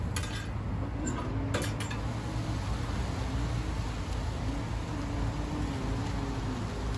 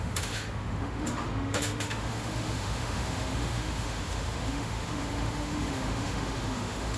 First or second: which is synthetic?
second